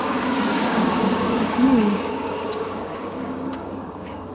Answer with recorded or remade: remade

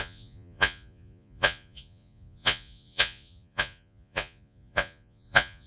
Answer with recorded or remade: remade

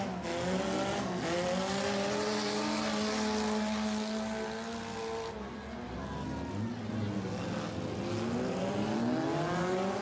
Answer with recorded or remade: recorded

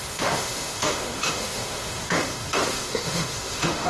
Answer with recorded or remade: remade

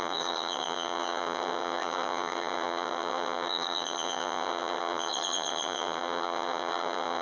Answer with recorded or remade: remade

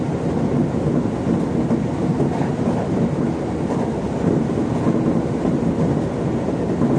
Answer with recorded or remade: recorded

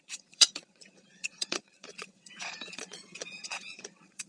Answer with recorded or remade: remade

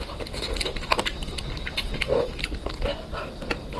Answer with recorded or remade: recorded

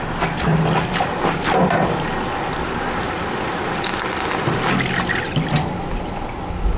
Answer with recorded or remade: recorded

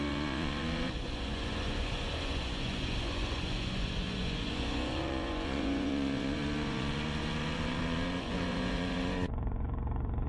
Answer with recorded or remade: remade